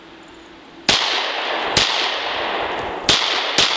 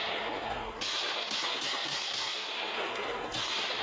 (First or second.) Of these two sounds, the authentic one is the first